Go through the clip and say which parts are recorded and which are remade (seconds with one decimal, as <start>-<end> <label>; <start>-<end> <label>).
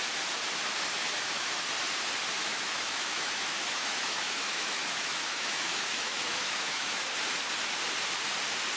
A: 0.0-1.0 recorded; 1.0-1.6 remade; 1.6-2.4 recorded; 2.4-7.0 remade; 7.0-8.8 recorded